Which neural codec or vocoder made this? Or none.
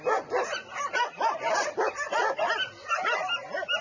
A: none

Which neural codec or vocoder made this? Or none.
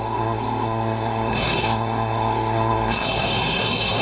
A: codec, SNAC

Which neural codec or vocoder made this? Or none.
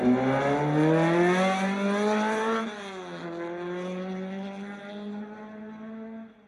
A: none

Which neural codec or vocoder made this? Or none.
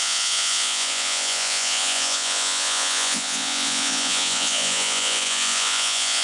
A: vocoder, Vocos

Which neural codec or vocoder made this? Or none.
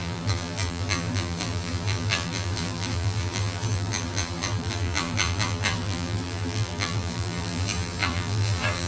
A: vocoder, BigVGAN v2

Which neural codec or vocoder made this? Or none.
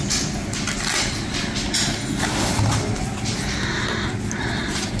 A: none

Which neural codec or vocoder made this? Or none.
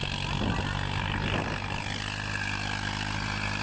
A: none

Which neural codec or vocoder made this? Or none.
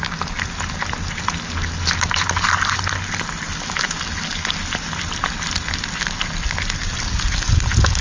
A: none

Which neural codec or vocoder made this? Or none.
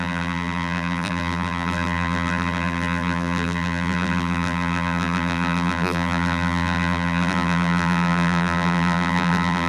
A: vocoder, BigVGAN v2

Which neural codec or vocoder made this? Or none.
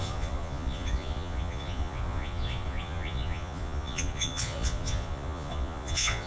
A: vocoder, Vocos